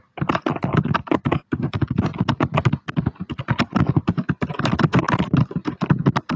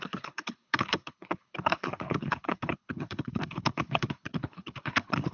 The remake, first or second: second